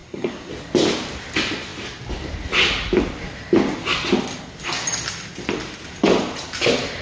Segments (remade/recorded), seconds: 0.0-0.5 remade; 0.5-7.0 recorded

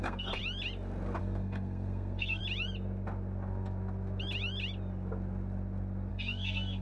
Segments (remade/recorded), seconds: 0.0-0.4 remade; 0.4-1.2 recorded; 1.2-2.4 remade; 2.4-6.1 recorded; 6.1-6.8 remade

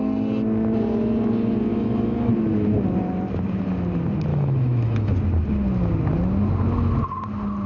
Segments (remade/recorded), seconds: 0.0-1.7 recorded; 1.7-2.3 remade; 2.3-4.3 recorded; 4.3-5.1 remade; 5.1-7.7 recorded